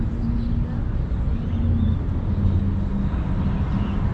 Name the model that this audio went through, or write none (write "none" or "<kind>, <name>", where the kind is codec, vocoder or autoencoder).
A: none